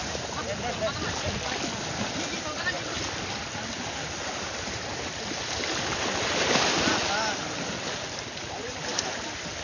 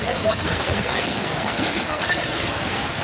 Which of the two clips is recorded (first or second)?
first